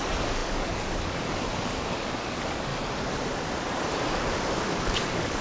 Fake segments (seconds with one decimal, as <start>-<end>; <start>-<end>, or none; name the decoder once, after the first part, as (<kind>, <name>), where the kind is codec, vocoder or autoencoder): 0.0-2.7 (codec, DAC); 4.5-5.4